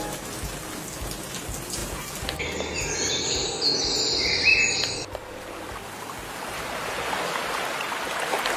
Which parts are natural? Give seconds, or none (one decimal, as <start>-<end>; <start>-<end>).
0.0-8.6